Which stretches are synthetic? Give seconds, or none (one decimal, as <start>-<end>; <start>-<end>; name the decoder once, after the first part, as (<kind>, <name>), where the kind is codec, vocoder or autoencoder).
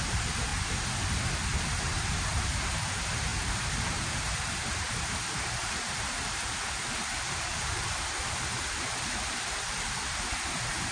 0.0-0.5 (vocoder, BigVGAN v2); 2.3-10.9